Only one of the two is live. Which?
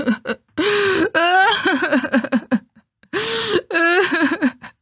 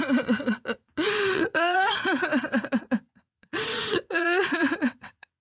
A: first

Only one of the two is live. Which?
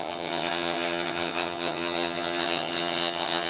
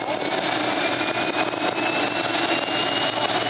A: second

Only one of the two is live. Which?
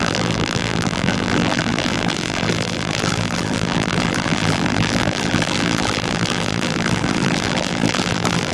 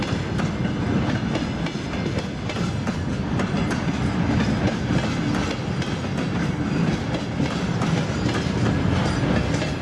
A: second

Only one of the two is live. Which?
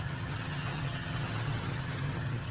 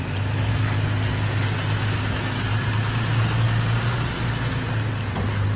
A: second